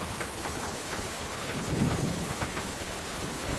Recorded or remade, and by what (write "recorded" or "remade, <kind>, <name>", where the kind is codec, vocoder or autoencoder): remade, codec, HILCodec